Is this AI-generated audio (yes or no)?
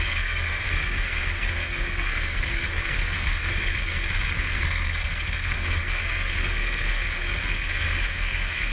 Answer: yes